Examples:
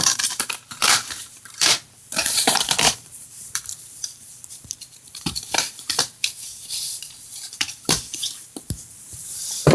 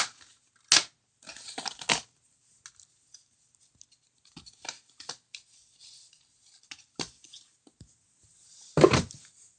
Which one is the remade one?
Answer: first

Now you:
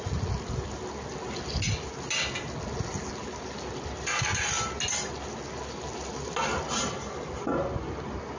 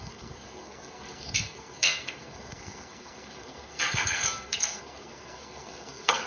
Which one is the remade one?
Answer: second